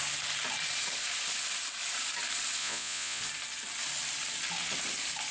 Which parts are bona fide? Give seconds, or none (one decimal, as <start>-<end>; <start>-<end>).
0.0-2.6; 3.2-5.3